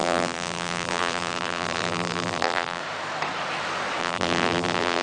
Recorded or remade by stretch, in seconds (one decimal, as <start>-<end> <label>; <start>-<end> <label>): 0.0-2.8 remade; 2.8-4.0 recorded; 4.0-5.0 remade